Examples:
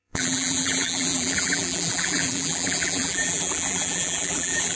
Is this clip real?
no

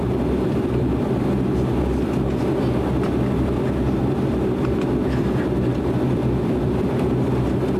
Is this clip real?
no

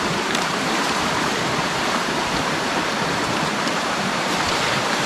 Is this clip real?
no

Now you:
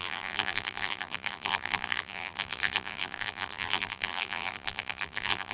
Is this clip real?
no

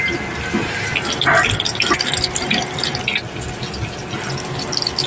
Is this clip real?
yes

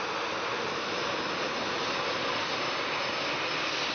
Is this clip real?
yes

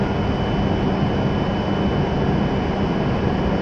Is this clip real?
yes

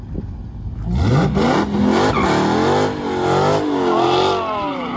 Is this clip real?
yes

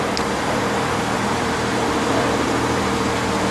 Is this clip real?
no